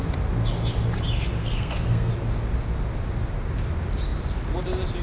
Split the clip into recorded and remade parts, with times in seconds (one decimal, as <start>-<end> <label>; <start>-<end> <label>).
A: 0.0-1.4 recorded; 1.4-2.1 remade; 2.1-5.0 recorded